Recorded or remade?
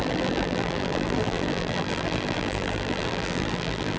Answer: remade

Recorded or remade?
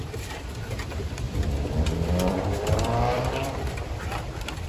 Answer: remade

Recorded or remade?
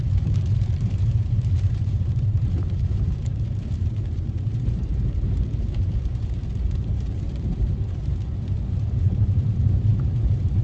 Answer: remade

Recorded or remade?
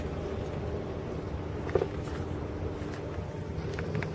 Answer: recorded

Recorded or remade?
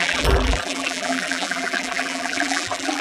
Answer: remade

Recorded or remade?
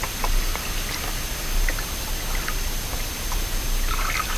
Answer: recorded